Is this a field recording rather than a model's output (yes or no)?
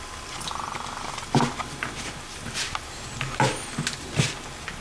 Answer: yes